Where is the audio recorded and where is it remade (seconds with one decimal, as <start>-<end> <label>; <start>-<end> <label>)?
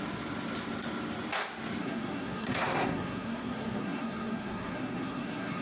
0.0-1.8 recorded; 1.8-5.6 remade